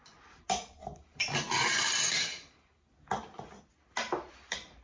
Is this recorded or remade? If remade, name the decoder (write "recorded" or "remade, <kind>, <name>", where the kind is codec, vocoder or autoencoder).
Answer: recorded